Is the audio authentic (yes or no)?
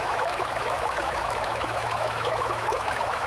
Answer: no